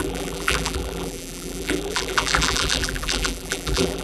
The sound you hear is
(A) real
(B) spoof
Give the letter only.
B